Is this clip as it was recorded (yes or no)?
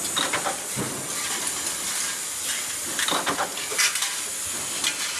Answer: yes